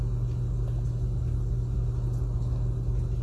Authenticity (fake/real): real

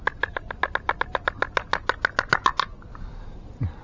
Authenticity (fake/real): real